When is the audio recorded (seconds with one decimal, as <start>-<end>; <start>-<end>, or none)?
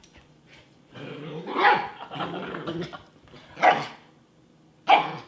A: 1.9-5.3